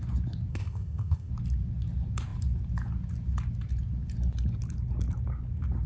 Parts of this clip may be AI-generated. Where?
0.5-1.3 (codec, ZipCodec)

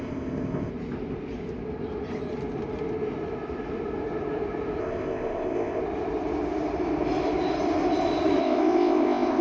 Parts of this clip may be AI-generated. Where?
0.0-0.7 (codec, ZipCodec); 4.8-5.8; 8.4-9.4

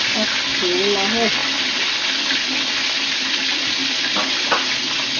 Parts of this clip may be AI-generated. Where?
none

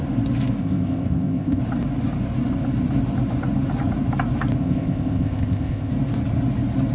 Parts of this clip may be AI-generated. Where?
0.6-1.6 (codec, ZipCodec); 4.6-5.9

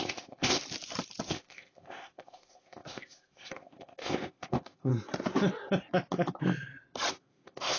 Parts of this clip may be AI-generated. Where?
0.0-0.6 (codec, ZipCodec); 1.3-4.9; 7.1-7.8

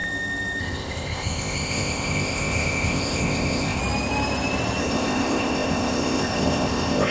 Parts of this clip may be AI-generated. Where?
0.6-3.8 (codec, ZipCodec); 4.8-7.1

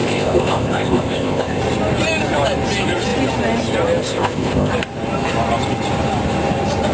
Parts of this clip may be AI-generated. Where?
0.0-1.6 (codec, ZipCodec); 4.0-4.7